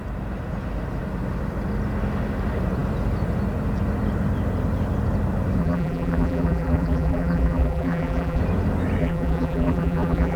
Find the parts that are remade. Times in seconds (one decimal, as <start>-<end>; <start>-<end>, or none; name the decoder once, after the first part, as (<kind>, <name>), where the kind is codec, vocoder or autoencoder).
5.6-8.4 (vocoder, BigVGAN v2); 9.0-10.4